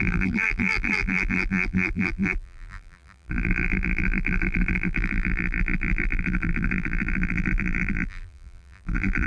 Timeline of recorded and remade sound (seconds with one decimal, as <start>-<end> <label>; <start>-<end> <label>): 0.0-9.3 remade